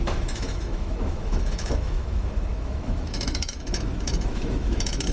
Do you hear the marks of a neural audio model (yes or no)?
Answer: yes